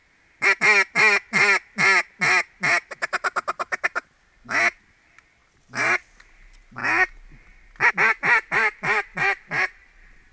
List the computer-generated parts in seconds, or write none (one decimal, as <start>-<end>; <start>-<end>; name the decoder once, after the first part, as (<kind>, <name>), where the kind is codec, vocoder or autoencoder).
none